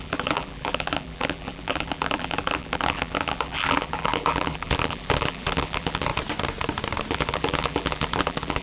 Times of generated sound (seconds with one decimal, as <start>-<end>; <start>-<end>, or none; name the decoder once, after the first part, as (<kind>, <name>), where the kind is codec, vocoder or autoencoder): 0.0-6.1 (vocoder, BigVGAN v2); 7.1-8.6